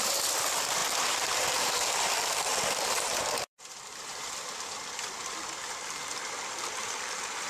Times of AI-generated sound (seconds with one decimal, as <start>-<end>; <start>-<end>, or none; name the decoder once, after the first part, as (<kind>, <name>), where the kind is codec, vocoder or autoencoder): 0.0-7.5 (vocoder, BigVGAN v2)